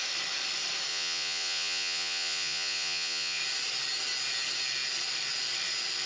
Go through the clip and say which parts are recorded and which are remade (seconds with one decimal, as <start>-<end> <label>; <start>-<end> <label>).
0.0-0.9 recorded; 0.9-3.4 remade; 3.4-6.1 recorded